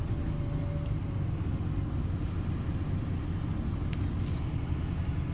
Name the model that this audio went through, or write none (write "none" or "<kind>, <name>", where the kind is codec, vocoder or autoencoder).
none